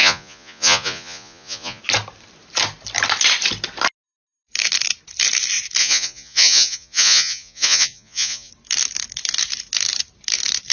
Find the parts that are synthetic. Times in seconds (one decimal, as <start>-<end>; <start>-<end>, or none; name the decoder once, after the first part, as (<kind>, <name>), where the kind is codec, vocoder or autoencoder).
0.0-1.8 (vocoder, Vocos); 5.8-8.5